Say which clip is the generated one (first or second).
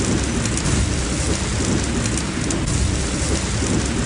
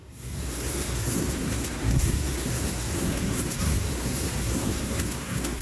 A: second